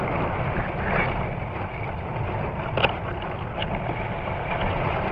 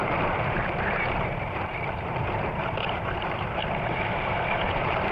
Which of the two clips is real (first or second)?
first